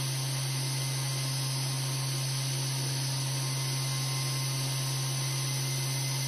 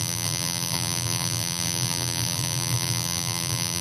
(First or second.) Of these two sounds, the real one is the first